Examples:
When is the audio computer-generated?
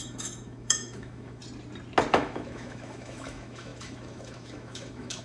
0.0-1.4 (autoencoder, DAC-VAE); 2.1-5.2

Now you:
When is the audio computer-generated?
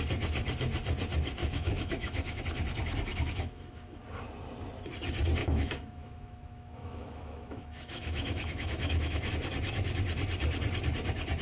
1.4-2.4 (autoencoder, DAC-VAE); 3.1-4.0; 5.4-9.3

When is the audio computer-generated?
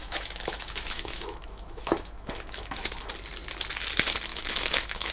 0.0-3.1 (autoencoder, DAC-VAE); 4.3-5.1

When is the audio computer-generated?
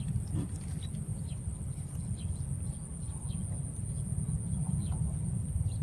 none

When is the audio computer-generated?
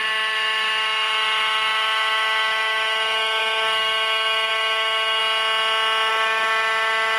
0.0-5.2 (autoencoder, DAC-VAE); 6.1-7.2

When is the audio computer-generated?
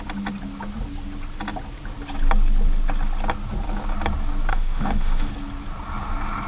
4.5-5.3 (autoencoder, DAC-VAE)